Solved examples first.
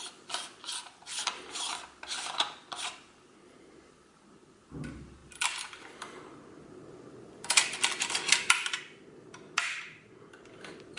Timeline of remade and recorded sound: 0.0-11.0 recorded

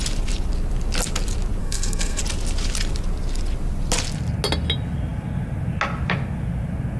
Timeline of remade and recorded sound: 0.0-1.6 recorded; 1.6-2.2 remade; 2.2-7.0 recorded